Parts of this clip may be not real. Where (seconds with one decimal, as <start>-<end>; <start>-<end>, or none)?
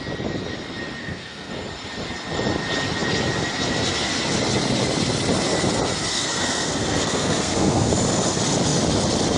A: 1.0-1.5; 6.1-7.9